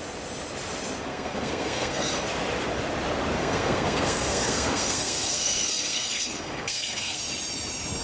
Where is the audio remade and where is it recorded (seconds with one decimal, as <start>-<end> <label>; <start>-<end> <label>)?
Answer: 0.0-1.1 recorded; 1.1-2.1 remade; 2.1-3.4 recorded; 3.4-7.2 remade; 7.2-8.0 recorded